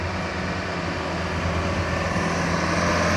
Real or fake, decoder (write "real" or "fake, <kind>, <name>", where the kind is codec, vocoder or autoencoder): real